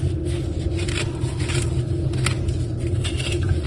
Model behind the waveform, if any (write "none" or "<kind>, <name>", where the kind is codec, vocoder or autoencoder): none